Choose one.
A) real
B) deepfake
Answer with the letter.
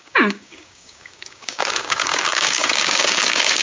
B